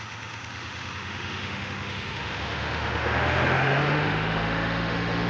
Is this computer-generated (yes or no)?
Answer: yes